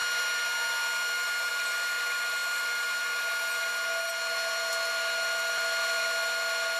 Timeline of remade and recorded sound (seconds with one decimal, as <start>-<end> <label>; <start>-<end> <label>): 0.0-6.8 recorded